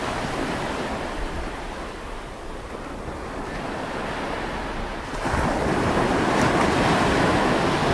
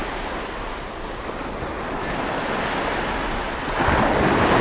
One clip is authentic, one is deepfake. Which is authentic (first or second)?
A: second